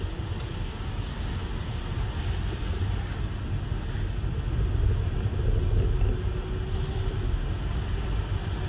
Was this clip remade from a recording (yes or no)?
no